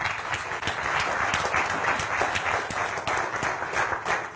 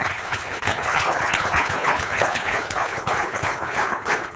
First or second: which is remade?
second